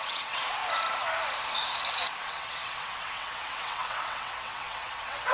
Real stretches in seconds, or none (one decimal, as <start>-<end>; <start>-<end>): 0.6-2.2